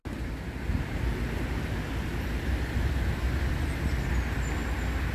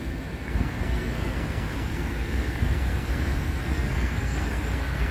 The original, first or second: first